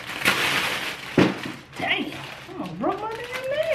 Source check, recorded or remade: recorded